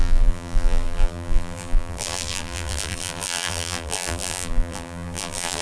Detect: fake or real fake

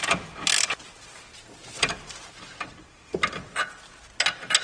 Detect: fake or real real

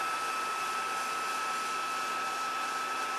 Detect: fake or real real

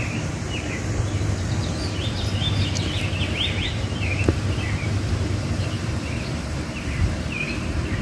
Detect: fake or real fake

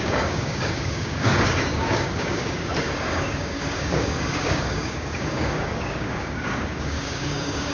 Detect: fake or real fake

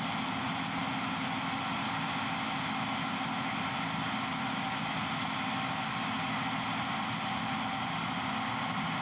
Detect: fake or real real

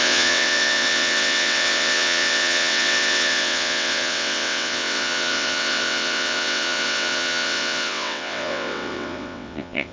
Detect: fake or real fake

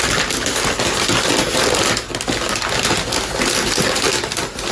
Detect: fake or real real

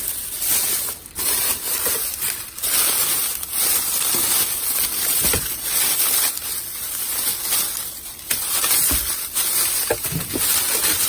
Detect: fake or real fake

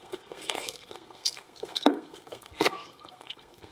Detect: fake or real fake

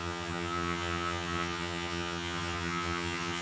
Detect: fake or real fake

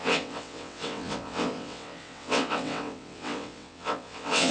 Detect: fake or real fake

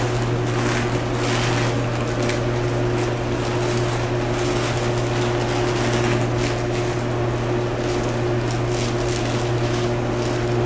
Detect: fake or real real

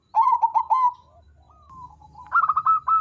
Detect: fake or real real